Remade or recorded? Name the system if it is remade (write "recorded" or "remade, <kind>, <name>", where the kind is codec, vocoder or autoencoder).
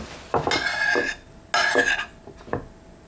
recorded